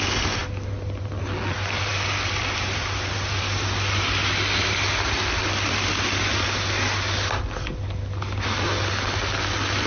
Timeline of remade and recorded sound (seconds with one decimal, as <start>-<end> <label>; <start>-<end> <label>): 0.0-9.9 recorded